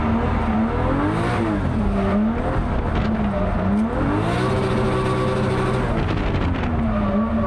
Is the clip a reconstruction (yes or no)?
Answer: no